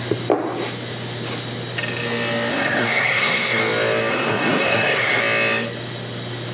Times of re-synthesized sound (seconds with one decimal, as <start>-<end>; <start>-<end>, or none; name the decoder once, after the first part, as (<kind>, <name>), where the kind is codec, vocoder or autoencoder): 2.5-3.6 (codec, SNAC); 4.1-5.2